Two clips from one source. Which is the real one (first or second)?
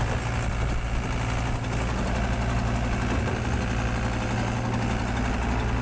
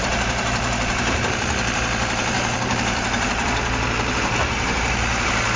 first